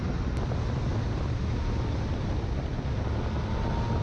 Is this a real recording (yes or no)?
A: yes